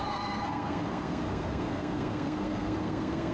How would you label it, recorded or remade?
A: remade